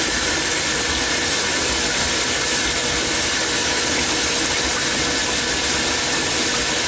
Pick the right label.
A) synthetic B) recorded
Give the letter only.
B